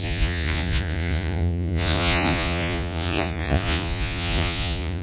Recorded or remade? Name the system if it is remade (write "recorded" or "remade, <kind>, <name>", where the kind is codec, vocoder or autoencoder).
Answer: remade, vocoder, Vocos